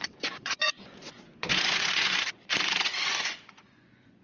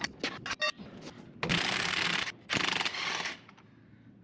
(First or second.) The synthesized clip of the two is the first